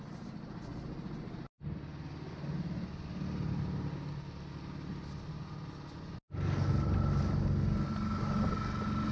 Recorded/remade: recorded